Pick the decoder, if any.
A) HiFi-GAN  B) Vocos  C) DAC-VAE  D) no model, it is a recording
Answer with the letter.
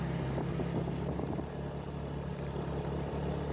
D